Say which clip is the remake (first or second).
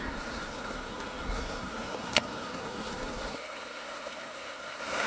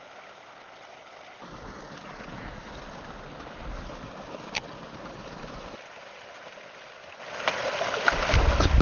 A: first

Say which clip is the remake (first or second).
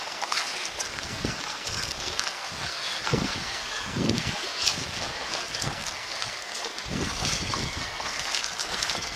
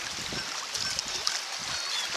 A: first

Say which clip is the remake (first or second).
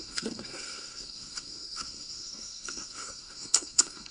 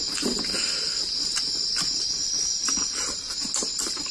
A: first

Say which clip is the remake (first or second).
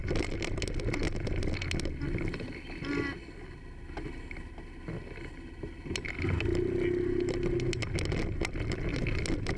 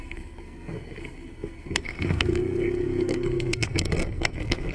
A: second